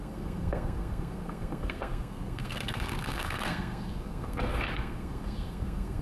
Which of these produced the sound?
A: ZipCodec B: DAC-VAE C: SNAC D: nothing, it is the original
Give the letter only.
C